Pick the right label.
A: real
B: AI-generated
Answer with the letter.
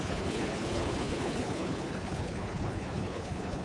B